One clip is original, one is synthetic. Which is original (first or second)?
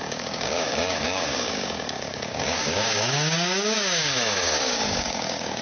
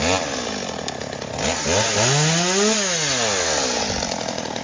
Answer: second